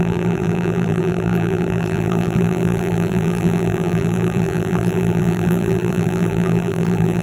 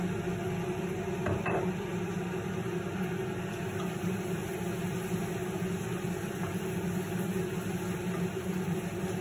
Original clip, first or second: second